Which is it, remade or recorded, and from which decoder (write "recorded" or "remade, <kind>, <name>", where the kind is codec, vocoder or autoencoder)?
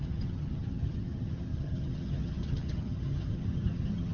remade, vocoder, HiFi-GAN